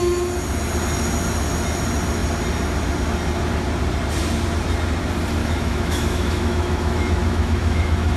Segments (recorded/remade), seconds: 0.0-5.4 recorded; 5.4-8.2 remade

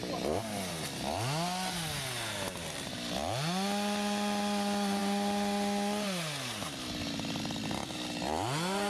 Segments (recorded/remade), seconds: 0.0-8.9 recorded

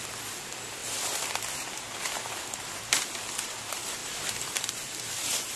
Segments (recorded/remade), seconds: 0.0-4.0 recorded; 4.0-5.6 remade

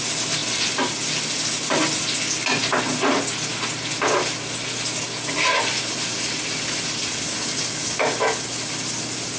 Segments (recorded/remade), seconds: 0.0-9.4 recorded

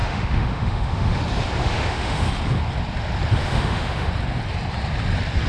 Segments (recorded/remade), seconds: 0.0-1.2 remade; 1.2-1.6 recorded; 1.6-2.3 remade; 2.3-3.4 recorded; 3.4-4.1 remade; 4.1-5.5 recorded